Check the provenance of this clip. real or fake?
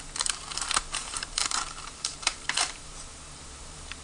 fake